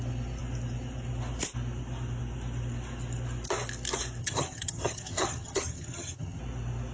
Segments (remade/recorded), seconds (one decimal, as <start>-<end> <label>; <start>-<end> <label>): 0.0-4.2 recorded; 4.2-6.4 remade; 6.4-6.9 recorded